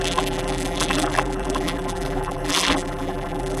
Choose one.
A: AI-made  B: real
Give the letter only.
A